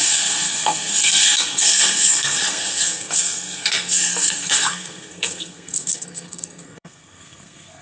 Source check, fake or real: fake